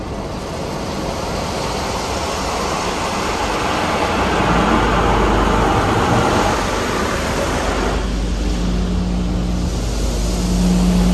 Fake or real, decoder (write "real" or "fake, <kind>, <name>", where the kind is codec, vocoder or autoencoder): real